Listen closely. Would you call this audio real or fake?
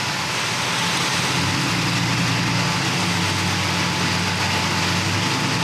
real